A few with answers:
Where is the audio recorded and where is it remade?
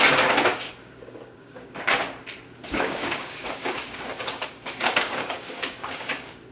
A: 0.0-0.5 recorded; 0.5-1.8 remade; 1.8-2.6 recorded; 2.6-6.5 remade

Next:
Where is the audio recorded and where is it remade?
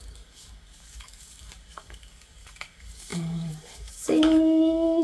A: 0.0-5.0 remade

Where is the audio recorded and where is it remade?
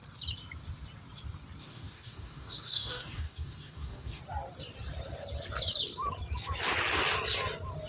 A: 0.0-1.6 recorded; 1.6-4.2 remade; 4.2-7.9 recorded